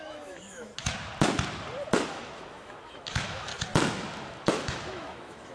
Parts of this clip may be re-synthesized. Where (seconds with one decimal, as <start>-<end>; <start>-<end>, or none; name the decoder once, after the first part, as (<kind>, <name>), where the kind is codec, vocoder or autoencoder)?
0.0-0.7 (autoencoder, DAC-VAE); 2.1-3.5; 4.5-5.5